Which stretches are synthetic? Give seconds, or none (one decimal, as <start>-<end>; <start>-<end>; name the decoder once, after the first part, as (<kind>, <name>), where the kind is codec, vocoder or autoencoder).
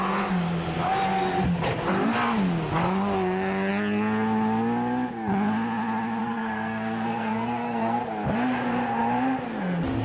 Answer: 6.2-8.0 (codec, SNAC)